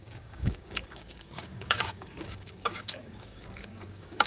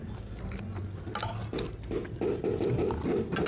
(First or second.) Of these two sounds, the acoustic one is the second